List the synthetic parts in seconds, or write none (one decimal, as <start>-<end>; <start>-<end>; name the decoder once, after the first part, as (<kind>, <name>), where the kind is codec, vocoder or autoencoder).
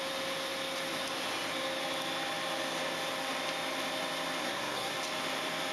4.4-4.9 (codec, SNAC)